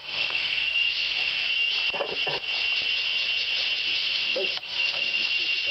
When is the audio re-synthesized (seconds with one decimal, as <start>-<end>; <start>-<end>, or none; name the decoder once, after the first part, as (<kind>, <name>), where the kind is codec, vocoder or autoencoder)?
0.0-1.4 (autoencoder, DAC-VAE); 4.0-5.3